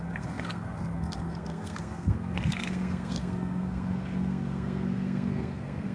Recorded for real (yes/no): no